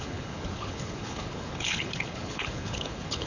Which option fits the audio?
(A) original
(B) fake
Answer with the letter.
B